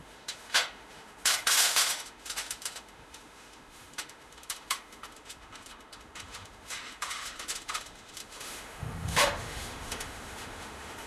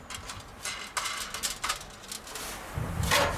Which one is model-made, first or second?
first